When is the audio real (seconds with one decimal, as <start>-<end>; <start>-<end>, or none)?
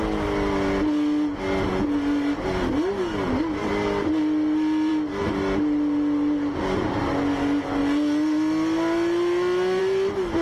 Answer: 0.0-10.4